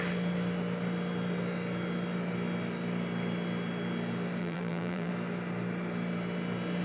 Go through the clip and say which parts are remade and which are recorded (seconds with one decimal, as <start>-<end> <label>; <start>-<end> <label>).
0.0-4.4 recorded; 4.4-5.1 remade; 5.1-6.8 recorded